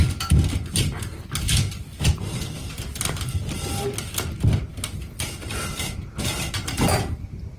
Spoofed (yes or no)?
no